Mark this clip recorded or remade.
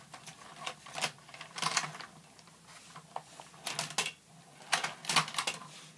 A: recorded